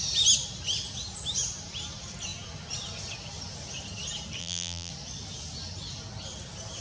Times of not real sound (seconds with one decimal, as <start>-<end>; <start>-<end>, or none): 4.4-4.9